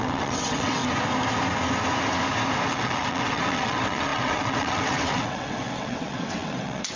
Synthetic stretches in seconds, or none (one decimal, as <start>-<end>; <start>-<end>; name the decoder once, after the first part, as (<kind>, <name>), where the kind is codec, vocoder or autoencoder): 0.0-0.8 (vocoder, WaveNeXt); 2.7-7.0